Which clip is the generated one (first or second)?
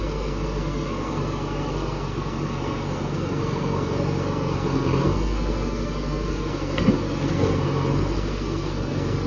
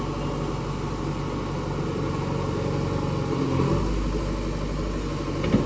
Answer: first